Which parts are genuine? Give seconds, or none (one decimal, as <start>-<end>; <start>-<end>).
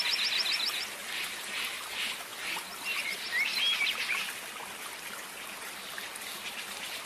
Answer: 0.0-7.1